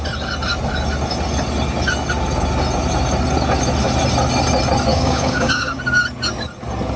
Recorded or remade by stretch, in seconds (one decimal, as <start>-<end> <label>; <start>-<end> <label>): 0.0-4.9 recorded; 4.9-5.8 remade; 5.8-7.0 recorded